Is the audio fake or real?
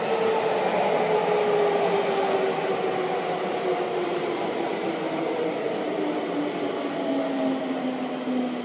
real